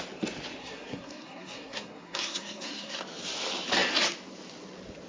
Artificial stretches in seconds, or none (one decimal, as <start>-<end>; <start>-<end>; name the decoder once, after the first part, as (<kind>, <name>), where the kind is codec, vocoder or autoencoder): 0.6-3.0 (codec, SNAC)